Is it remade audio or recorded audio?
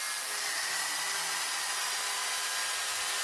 recorded